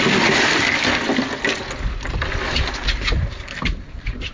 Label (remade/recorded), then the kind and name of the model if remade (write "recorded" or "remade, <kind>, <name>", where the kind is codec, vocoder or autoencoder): recorded